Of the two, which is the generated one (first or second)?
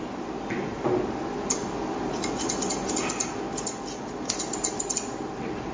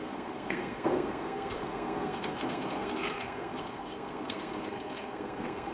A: second